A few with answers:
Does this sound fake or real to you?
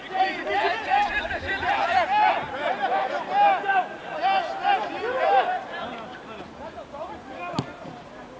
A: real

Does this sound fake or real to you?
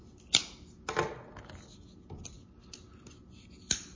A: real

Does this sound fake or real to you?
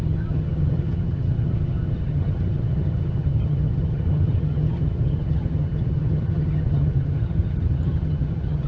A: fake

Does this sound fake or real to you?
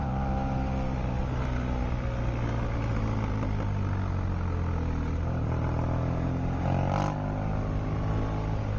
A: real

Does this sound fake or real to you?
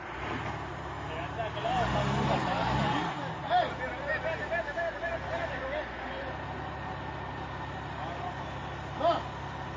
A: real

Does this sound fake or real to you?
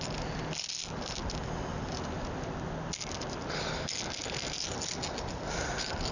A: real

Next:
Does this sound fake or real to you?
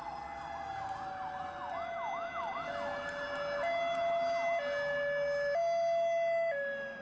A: real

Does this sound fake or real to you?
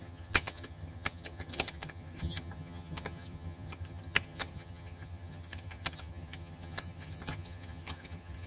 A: fake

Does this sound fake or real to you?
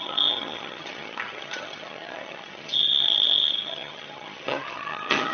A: fake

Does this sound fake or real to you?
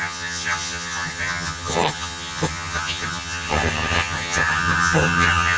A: fake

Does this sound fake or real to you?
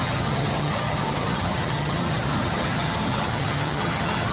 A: fake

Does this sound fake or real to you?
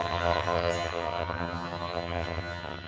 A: fake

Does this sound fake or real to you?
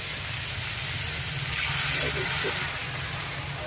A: real